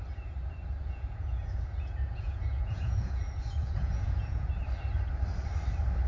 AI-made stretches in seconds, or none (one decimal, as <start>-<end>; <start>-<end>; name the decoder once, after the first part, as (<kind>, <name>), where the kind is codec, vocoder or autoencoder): 0.8-4.5 (vocoder, Vocos)